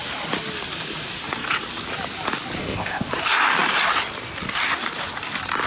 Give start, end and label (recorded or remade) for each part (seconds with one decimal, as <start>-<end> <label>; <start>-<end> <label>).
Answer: 0.0-2.6 recorded; 2.6-3.1 remade; 3.1-5.7 recorded